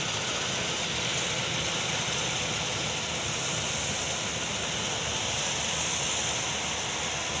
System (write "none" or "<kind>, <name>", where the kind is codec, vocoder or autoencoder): none